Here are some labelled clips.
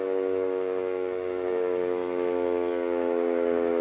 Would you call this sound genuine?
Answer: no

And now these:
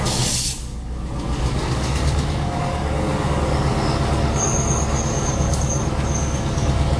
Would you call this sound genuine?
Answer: no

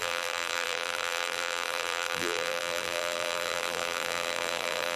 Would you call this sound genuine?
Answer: no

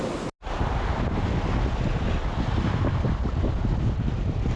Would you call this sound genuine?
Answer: yes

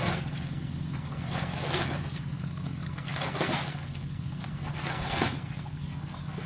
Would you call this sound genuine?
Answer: no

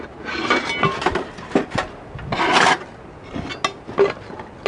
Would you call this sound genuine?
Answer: yes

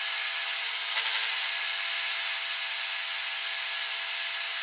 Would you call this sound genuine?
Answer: yes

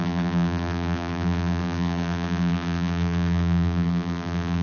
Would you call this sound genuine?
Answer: no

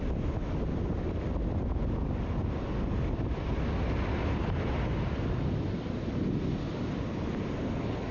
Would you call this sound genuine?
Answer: yes